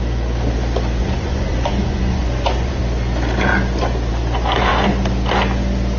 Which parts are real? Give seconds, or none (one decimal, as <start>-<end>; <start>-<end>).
0.0-1.0; 2.8-6.0